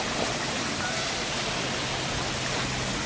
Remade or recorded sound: recorded